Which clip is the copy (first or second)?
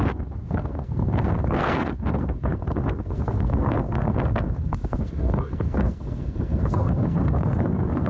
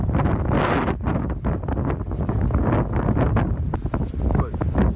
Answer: first